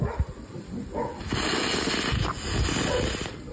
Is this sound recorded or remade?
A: recorded